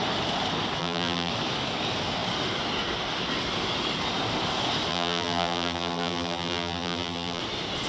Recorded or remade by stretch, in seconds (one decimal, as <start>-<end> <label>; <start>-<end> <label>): 0.0-0.8 recorded; 0.8-1.3 remade; 1.3-4.9 recorded; 4.9-7.4 remade; 7.4-7.9 recorded